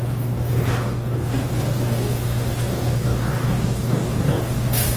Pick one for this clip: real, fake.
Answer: fake